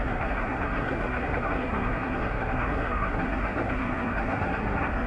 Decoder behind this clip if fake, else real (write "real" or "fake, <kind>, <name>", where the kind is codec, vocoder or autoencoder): fake, codec, SNAC